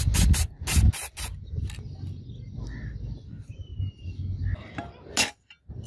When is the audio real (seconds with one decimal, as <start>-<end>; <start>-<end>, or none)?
0.0-5.9